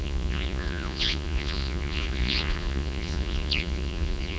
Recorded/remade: remade